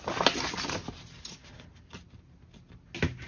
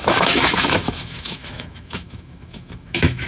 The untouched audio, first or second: first